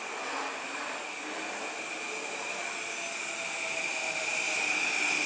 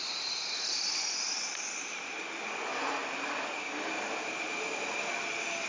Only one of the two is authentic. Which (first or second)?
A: first